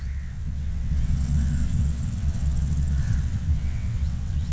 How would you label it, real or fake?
fake